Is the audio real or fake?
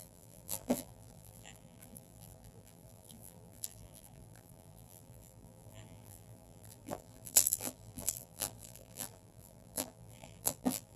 fake